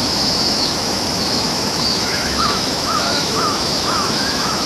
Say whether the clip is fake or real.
fake